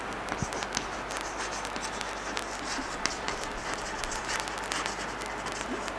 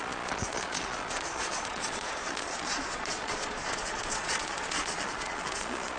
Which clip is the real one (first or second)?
first